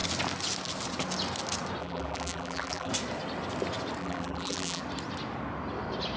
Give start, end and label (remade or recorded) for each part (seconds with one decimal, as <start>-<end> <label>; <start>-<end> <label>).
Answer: 0.0-1.8 recorded; 1.8-2.9 remade; 2.9-4.0 recorded; 4.0-4.8 remade; 4.8-6.2 recorded